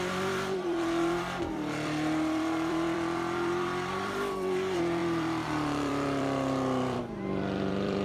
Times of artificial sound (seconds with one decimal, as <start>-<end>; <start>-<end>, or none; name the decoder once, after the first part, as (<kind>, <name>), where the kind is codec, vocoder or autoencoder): 0.0-8.0 (vocoder, BigVGAN v2)